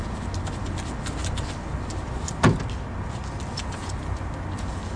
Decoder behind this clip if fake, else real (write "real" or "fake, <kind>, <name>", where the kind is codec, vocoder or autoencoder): real